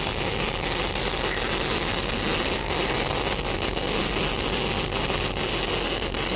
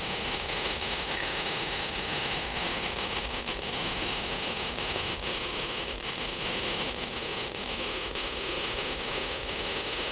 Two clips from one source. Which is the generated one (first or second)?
second